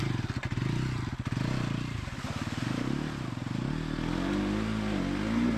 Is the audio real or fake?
real